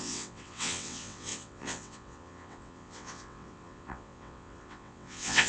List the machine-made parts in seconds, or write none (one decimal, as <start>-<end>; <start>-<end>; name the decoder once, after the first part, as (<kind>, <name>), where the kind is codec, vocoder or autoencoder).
0.0-5.5 (vocoder, WaveNeXt)